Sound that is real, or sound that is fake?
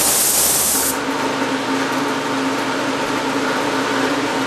real